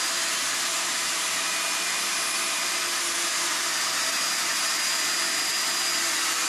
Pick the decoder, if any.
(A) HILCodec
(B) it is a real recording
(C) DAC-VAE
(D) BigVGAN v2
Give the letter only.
B